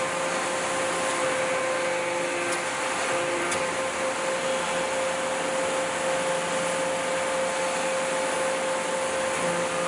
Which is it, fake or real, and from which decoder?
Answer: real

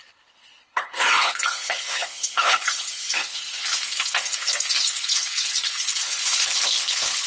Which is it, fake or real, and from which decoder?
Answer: fake, codec, HILCodec